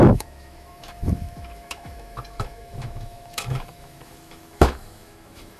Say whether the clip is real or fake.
fake